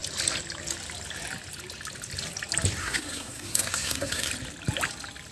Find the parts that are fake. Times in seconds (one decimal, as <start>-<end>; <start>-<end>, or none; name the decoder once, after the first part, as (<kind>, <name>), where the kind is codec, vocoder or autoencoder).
2.8-4.3 (codec, SNAC)